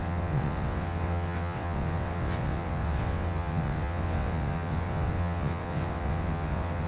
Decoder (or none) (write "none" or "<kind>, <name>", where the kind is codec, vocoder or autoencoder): vocoder, WaveNeXt